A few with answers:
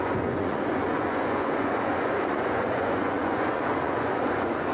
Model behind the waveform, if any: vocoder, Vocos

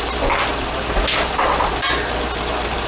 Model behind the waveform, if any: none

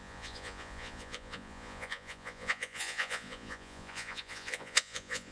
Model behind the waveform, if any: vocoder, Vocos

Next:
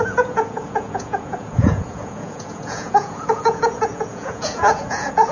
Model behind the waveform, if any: vocoder, Vocos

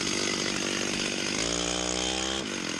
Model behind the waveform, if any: none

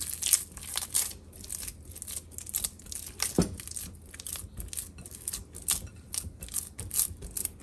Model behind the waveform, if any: none